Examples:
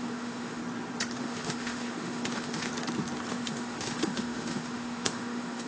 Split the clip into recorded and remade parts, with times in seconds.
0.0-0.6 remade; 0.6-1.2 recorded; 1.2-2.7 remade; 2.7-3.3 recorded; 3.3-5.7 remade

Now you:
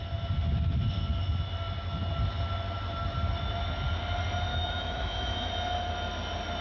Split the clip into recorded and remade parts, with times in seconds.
0.0-4.5 recorded; 4.5-5.5 remade; 5.5-6.6 recorded

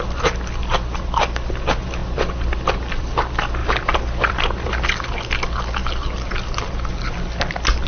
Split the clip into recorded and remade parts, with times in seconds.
0.0-3.6 recorded; 3.6-4.7 remade; 4.7-7.9 recorded